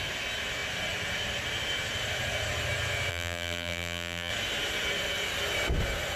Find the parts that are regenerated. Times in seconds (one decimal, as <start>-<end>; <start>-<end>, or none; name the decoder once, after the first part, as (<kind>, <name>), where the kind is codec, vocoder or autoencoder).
3.1-4.3 (vocoder, BigVGAN v2)